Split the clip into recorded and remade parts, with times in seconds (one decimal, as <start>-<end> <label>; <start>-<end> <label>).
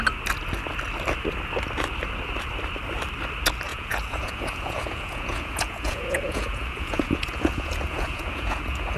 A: 0.0-3.7 recorded; 3.7-9.0 remade